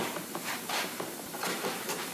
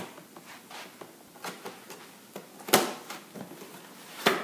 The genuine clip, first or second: second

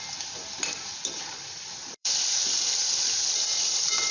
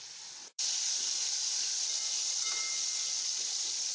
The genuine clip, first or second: second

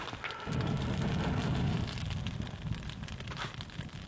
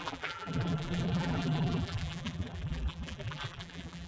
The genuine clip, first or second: first